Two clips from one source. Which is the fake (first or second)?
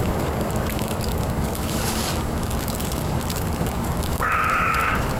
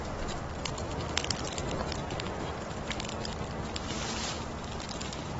first